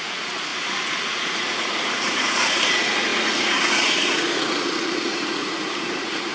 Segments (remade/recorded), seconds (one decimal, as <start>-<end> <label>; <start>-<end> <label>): 0.0-6.3 remade